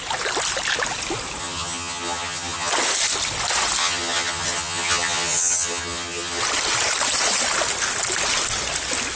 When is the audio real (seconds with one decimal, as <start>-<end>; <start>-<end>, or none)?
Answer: 0.0-1.4; 2.7-3.8; 6.4-9.2